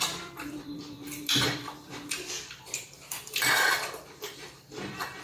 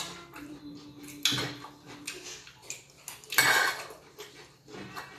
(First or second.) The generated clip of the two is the first